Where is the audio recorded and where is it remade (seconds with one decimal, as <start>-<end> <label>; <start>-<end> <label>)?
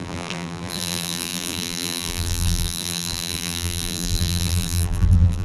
0.0-5.4 remade